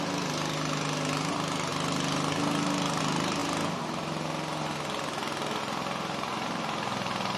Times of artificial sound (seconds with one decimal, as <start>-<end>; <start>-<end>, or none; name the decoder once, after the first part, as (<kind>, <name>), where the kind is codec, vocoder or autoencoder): none